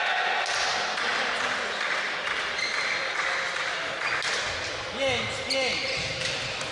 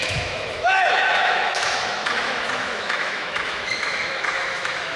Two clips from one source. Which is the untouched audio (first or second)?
first